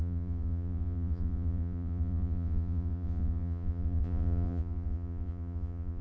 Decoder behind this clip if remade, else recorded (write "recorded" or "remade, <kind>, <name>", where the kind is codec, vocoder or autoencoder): remade, vocoder, Vocos